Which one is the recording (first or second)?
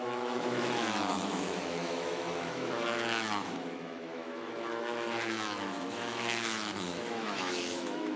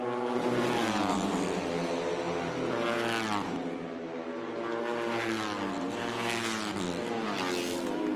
second